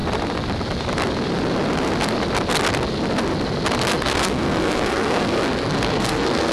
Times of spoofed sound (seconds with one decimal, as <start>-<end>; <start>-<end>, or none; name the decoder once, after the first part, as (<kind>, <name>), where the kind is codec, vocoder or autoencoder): 3.9-6.5 (codec, SNAC)